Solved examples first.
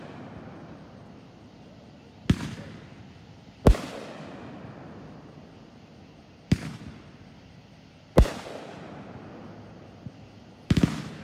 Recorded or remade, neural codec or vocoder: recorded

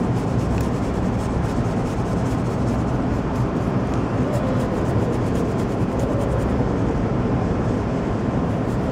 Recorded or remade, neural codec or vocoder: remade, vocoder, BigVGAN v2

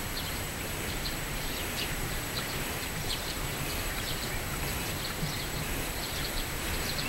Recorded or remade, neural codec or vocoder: remade, vocoder, BigVGAN v2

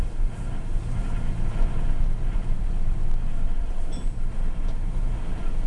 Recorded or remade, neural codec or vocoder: remade, vocoder, BigVGAN v2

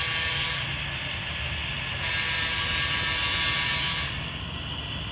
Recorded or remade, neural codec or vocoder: recorded